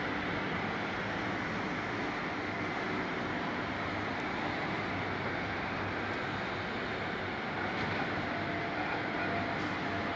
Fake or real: real